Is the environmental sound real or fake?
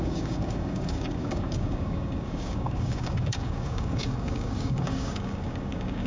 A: fake